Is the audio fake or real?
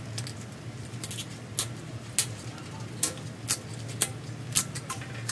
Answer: real